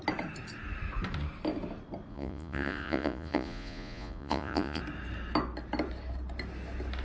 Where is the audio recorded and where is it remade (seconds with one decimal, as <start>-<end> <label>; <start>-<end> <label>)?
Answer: 0.0-2.1 recorded; 2.1-4.8 remade; 4.8-7.0 recorded